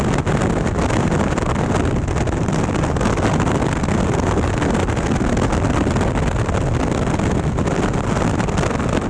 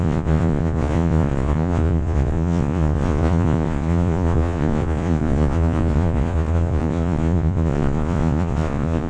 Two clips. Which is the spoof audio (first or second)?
second